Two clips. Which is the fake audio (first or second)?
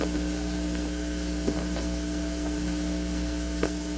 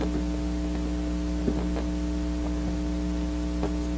first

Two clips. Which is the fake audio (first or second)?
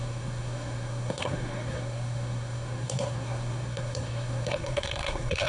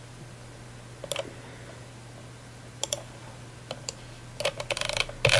first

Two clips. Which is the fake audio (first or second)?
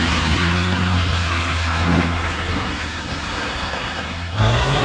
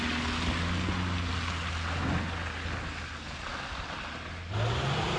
first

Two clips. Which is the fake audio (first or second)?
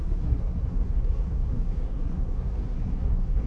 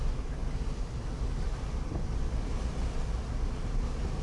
first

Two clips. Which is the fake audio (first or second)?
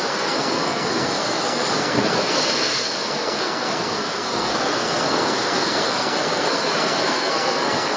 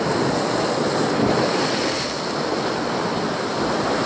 first